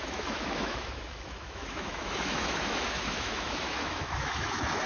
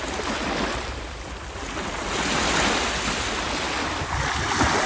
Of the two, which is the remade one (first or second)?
first